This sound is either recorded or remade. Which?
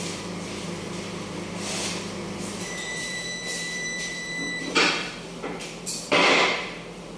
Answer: remade